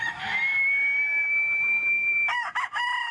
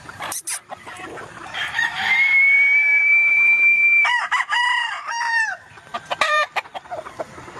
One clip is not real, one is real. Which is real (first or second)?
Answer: first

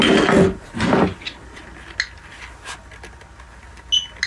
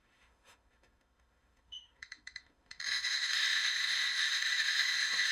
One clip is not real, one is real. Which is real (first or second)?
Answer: first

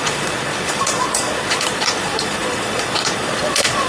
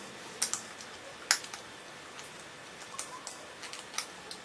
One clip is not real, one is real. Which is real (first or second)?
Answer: second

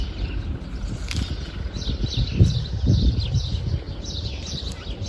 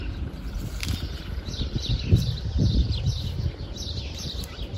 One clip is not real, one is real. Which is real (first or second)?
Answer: first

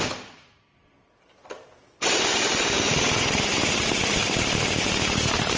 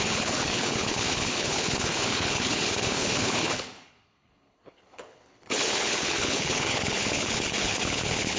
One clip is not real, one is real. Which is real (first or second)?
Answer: first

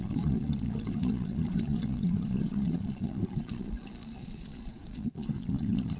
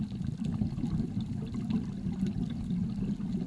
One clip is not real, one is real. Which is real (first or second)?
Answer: second